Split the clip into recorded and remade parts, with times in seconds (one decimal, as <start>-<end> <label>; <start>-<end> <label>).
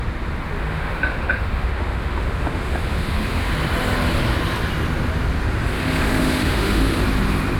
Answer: 0.0-0.6 recorded; 0.6-3.5 remade; 3.5-5.7 recorded; 5.7-7.0 remade; 7.0-7.6 recorded